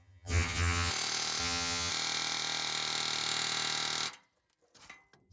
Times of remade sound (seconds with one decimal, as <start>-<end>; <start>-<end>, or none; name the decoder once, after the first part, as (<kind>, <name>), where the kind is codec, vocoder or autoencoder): 0.0-0.9 (vocoder, HiFi-GAN); 1.4-1.9